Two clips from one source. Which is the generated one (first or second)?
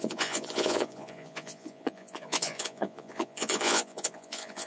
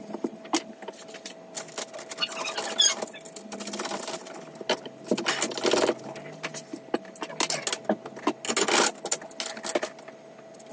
first